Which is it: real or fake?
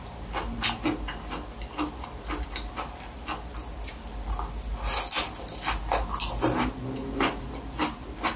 real